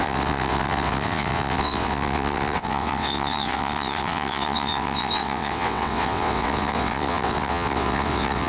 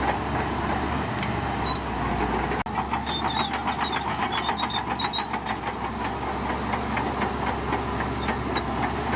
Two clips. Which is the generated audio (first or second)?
first